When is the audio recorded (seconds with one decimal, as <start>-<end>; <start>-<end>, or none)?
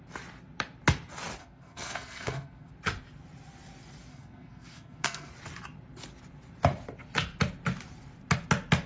0.0-1.4; 2.7-4.1; 5.3-8.9